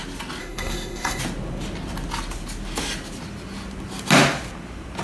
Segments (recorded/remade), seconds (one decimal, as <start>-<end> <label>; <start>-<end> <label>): 0.0-0.4 recorded; 0.4-1.2 remade; 1.2-5.0 recorded